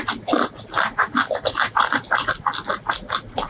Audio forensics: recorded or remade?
recorded